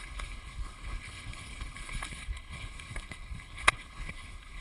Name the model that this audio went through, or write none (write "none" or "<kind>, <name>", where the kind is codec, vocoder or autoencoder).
codec, HILCodec